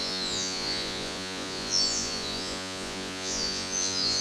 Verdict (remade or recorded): remade